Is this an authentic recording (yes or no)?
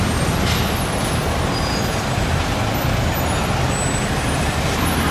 yes